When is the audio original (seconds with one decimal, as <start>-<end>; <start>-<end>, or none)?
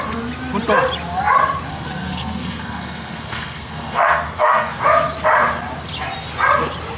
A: 0.0-1.7; 4.8-7.0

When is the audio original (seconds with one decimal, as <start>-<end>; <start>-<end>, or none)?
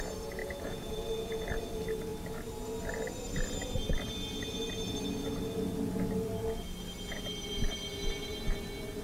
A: 0.0-0.4; 1.6-9.0